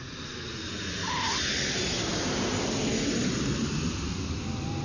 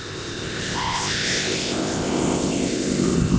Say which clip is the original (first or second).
first